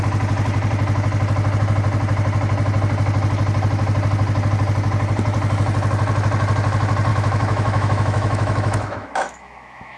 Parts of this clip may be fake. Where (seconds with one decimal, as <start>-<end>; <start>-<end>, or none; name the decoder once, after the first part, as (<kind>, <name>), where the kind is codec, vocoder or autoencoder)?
7.1-10.0 (autoencoder, DAC-VAE)